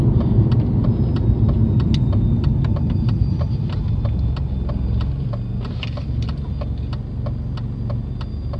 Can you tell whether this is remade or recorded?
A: recorded